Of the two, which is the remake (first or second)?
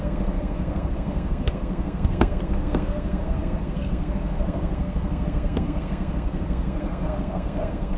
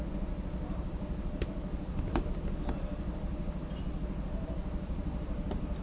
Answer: first